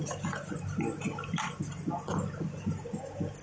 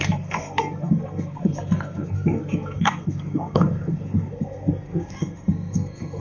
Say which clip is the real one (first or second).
first